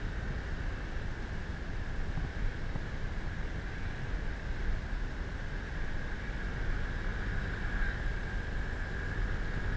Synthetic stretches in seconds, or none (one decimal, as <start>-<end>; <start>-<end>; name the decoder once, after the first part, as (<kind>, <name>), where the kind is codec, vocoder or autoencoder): 1.5-6.3 (vocoder, BigVGAN v2); 7.1-8.0